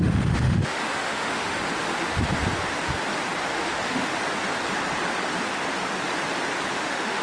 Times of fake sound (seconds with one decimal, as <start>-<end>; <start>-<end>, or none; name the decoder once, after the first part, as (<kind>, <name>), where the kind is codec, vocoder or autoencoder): 0.0-1.6 (autoencoder, DAC-VAE); 3.5-4.1; 6.7-7.2